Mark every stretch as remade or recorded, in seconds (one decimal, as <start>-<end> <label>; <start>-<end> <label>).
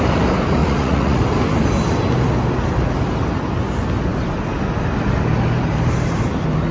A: 0.0-0.6 recorded; 0.6-1.2 remade; 1.2-6.7 recorded